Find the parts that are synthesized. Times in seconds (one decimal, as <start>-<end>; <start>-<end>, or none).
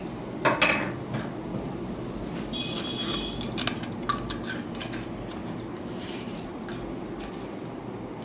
5.4-6.4